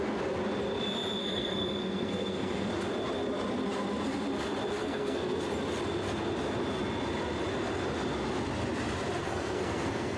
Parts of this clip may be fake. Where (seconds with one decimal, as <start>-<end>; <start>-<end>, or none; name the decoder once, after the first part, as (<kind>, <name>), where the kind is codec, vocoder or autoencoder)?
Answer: 1.2-2.7 (codec, SNAC); 4.8-5.4; 9.2-10.2